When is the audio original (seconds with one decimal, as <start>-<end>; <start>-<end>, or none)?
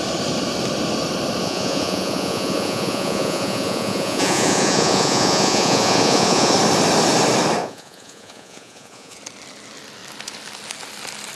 0.0-1.4; 6.5-7.6; 9.2-11.4